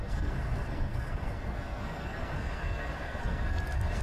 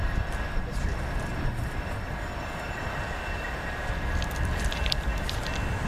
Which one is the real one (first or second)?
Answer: second